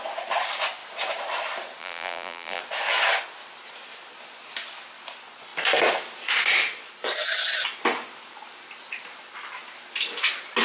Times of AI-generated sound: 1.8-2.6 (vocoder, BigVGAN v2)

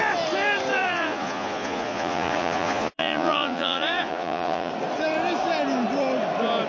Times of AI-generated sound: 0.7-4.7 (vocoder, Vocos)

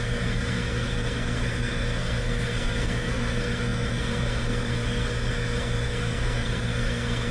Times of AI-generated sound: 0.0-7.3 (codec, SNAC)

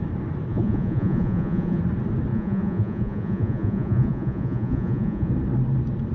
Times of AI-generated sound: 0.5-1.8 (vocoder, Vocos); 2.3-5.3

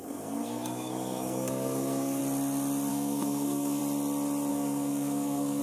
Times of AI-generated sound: 0.0-2.2 (codec, SNAC); 2.9-3.8; 4.5-5.6